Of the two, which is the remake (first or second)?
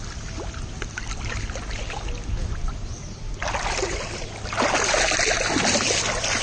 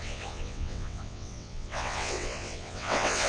second